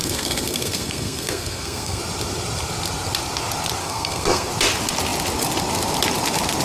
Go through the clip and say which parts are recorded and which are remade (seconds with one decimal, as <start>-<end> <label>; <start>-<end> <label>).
0.0-2.0 remade; 2.0-3.8 recorded; 3.8-4.5 remade; 4.5-6.6 recorded